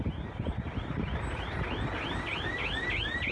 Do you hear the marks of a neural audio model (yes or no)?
no